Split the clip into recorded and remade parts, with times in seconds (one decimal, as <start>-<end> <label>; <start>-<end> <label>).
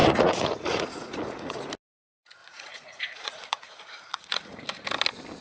0.0-1.7 remade; 1.7-2.4 recorded; 2.4-4.7 remade; 4.7-5.4 recorded